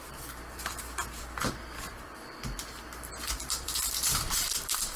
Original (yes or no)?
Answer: no